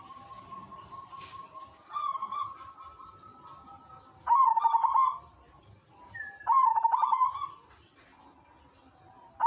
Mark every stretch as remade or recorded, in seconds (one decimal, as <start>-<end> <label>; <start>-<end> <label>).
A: 0.0-0.6 recorded; 0.6-1.1 remade; 1.1-9.5 recorded